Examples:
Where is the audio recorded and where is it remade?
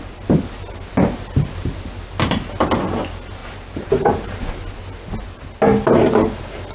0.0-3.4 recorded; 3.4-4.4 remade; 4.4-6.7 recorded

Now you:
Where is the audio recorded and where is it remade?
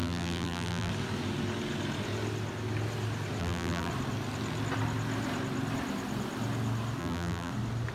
0.0-0.9 remade; 0.9-3.4 recorded; 3.4-3.9 remade; 3.9-7.0 recorded; 7.0-7.5 remade; 7.5-7.9 recorded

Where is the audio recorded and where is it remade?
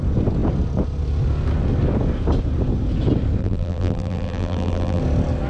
0.0-3.4 recorded; 3.4-5.0 remade; 5.0-5.5 recorded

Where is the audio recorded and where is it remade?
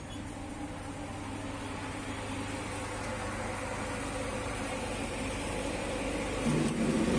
0.0-4.3 recorded; 4.3-5.5 remade; 5.5-7.2 recorded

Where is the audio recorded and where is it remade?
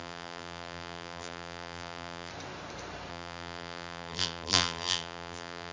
0.0-2.3 remade; 2.3-3.1 recorded; 3.1-5.7 remade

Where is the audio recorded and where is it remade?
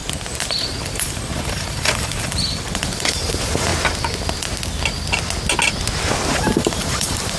0.0-0.5 recorded; 0.5-3.7 remade; 3.7-6.3 recorded; 6.3-7.4 remade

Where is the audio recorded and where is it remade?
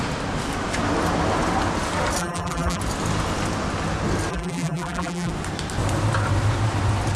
0.0-2.2 recorded; 2.2-2.8 remade; 2.8-4.3 recorded; 4.3-5.3 remade; 5.3-7.2 recorded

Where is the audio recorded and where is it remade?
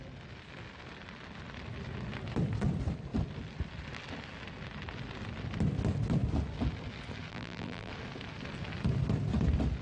0.0-7.3 recorded; 7.3-7.9 remade; 7.9-9.8 recorded